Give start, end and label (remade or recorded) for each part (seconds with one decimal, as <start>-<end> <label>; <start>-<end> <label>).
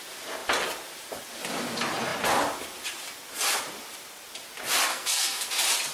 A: 0.0-4.9 recorded; 4.9-5.5 remade; 5.5-5.9 recorded